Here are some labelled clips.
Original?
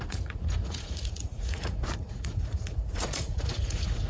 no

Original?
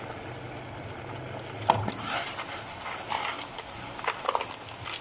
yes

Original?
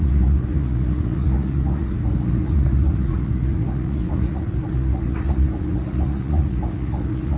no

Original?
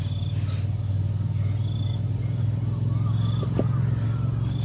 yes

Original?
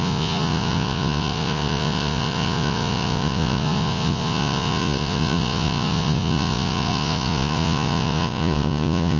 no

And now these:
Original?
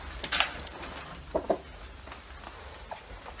yes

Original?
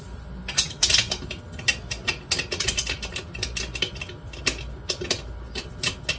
yes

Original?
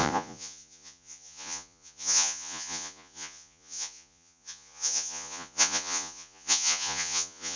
no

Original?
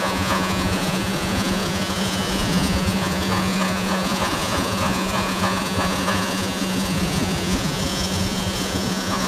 no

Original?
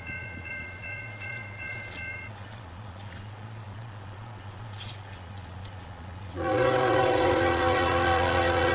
no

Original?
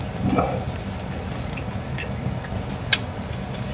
yes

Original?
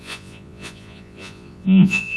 no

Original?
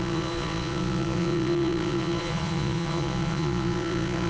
no